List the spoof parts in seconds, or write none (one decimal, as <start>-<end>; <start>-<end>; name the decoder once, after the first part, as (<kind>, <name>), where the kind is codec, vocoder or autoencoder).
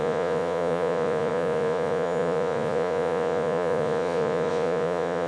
0.0-5.3 (vocoder, Vocos)